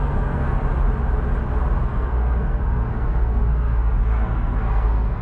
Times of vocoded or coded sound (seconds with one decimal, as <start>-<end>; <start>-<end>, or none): 0.0-0.6; 1.8-5.2